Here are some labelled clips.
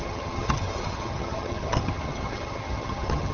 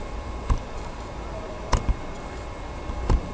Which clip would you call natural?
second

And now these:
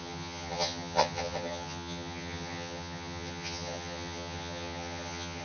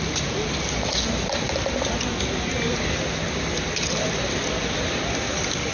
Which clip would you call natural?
second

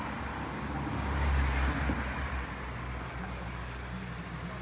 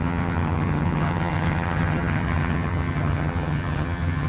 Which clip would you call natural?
first